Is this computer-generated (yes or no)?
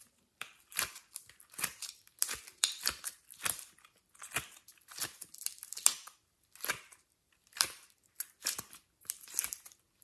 yes